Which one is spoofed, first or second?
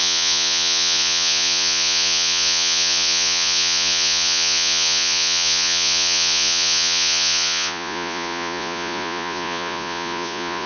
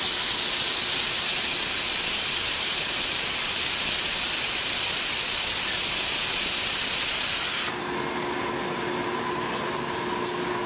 first